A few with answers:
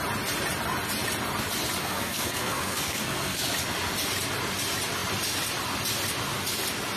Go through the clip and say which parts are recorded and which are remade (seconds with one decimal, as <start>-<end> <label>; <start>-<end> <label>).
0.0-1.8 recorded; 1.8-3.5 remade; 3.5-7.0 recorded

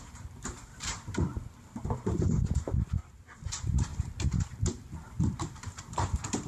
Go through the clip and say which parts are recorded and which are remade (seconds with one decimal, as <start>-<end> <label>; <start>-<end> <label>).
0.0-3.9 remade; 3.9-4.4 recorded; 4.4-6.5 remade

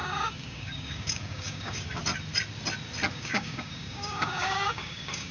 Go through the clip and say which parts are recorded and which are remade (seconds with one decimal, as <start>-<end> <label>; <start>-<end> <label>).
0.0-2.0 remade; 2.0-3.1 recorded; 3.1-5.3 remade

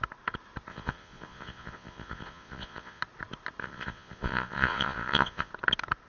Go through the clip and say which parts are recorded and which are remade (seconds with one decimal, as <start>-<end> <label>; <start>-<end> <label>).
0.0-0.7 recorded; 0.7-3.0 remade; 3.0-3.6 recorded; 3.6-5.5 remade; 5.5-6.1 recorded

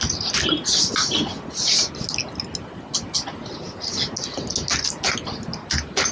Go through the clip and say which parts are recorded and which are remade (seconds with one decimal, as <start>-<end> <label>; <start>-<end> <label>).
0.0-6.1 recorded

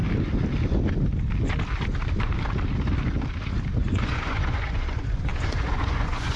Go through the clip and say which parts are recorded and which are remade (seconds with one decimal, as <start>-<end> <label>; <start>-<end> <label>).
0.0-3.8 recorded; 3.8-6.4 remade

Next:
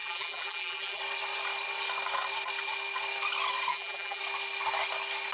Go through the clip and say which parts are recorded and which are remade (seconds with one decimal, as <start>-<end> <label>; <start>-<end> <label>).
0.0-1.0 remade; 1.0-3.7 recorded; 3.7-4.2 remade; 4.2-5.3 recorded

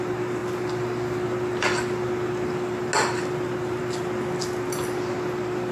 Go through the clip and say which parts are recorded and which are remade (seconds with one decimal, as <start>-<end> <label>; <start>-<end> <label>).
0.0-5.7 recorded